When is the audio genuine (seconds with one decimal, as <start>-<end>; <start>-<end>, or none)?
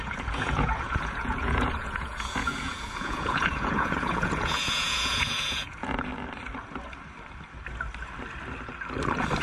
6.1-9.4